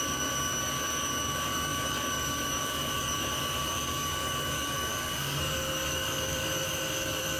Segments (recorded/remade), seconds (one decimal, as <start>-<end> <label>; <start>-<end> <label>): 0.0-7.4 remade